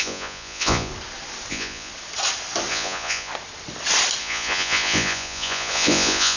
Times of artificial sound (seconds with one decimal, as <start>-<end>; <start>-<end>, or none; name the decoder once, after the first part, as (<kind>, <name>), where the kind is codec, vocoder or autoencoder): 0.0-0.9 (vocoder, Vocos); 1.5-1.9; 2.7-3.3; 4.2-6.4